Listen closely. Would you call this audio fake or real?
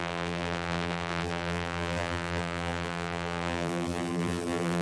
fake